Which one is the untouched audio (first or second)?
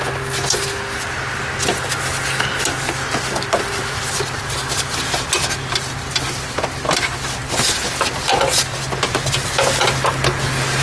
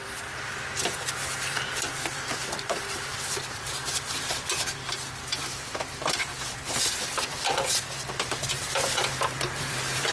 first